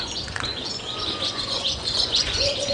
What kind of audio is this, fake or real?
fake